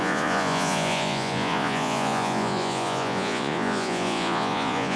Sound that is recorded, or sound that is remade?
remade